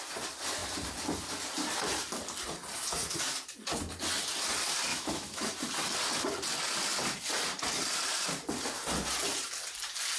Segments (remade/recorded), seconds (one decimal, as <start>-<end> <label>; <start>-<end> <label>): 0.0-4.9 recorded; 4.9-5.5 remade; 5.5-10.2 recorded